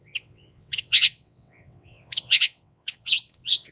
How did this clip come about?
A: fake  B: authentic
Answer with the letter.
A